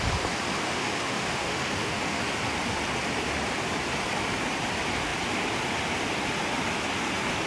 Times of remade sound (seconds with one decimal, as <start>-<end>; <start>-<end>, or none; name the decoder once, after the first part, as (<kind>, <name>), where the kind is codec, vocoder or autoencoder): 0.6-2.2 (autoencoder, DAC-VAE)